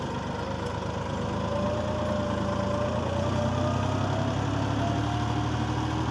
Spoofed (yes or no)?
no